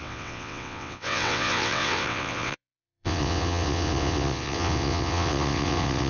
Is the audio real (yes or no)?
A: no